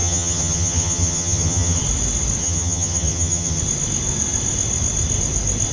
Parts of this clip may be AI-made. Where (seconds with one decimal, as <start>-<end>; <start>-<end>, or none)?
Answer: 0.0-1.8; 2.4-3.6